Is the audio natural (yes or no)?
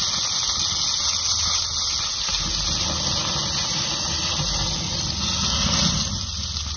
yes